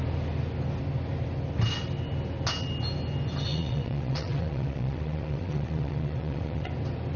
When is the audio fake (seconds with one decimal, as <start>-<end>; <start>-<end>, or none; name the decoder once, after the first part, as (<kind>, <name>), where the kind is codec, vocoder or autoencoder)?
3.5-6.7 (vocoder, WaveNeXt)

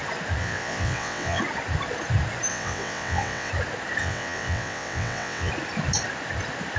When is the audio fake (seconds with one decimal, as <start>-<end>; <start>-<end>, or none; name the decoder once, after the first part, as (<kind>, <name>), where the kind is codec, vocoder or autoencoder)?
0.4-1.4 (vocoder, WaveNeXt); 2.5-3.5; 4.0-5.5

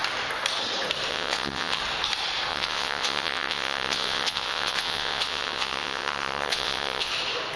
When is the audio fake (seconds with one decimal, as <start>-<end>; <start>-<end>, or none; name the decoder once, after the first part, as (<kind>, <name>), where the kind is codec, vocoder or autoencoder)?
1.1-1.8 (vocoder, WaveNeXt); 2.5-7.1

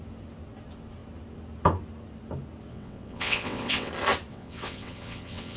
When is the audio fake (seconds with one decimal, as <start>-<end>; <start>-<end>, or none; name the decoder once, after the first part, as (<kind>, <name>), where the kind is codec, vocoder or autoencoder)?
2.7-3.9 (vocoder, WaveNeXt); 4.3-5.6